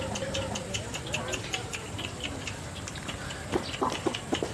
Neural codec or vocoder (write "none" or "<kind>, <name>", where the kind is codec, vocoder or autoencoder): vocoder, BigVGAN v2